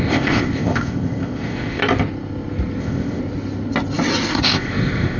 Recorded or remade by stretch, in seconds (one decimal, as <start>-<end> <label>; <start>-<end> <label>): 0.0-1.8 remade; 1.8-2.8 recorded; 2.8-3.2 remade; 3.2-4.3 recorded; 4.3-5.2 remade